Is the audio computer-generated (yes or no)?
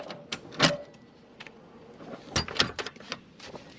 no